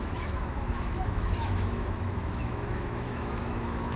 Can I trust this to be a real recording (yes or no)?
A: no